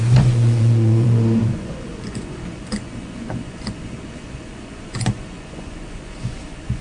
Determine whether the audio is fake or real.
fake